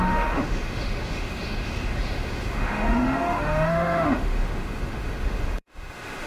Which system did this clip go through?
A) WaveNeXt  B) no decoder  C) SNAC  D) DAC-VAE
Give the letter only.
D